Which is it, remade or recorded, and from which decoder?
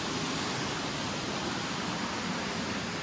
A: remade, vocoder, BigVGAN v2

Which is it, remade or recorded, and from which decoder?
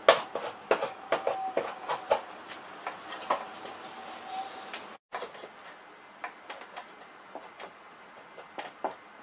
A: recorded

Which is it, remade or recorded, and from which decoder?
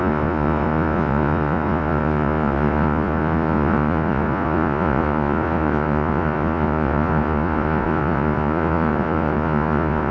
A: remade, vocoder, Vocos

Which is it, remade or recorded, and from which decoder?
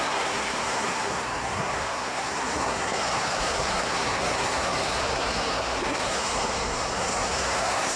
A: remade, codec, SNAC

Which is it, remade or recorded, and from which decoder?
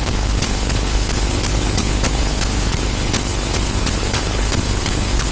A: remade, codec, HILCodec